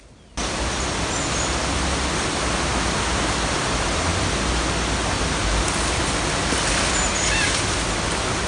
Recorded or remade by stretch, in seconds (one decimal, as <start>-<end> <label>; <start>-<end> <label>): 0.0-8.5 recorded